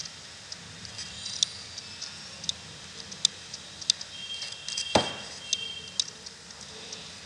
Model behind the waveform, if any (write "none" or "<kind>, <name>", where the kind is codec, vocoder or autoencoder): none